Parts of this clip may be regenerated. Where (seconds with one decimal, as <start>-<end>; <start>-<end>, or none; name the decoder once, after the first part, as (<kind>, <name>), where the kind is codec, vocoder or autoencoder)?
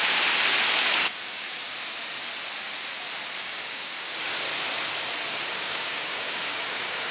0.7-1.7 (codec, DAC); 3.4-4.5; 5.3-7.1